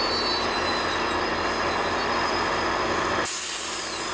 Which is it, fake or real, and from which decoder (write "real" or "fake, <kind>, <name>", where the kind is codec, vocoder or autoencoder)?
real